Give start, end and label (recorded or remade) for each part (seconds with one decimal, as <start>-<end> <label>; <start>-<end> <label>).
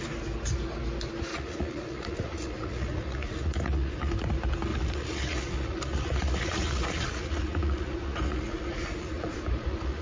0.0-1.3 recorded; 1.3-4.1 remade; 4.1-4.7 recorded; 4.7-10.0 remade